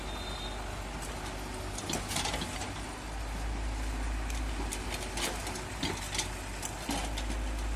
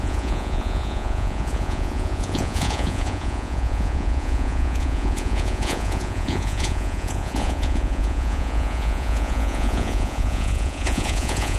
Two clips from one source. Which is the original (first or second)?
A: first